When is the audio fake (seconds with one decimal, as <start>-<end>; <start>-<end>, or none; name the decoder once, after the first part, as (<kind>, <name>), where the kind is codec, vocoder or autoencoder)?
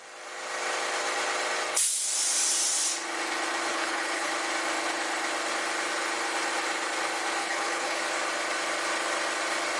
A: 3.7-4.3 (codec, HILCodec); 7.4-8.0